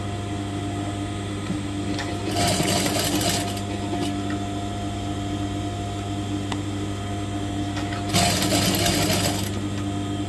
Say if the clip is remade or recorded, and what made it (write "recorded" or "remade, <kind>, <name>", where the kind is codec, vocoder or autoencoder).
recorded